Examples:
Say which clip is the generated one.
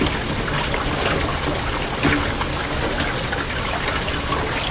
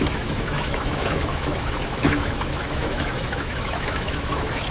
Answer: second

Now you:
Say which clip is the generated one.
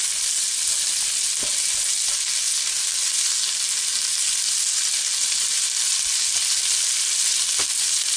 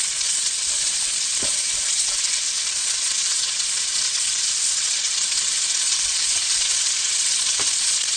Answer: second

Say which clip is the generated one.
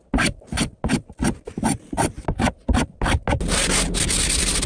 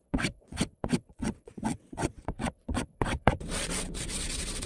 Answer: second